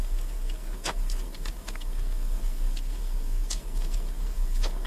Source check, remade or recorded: remade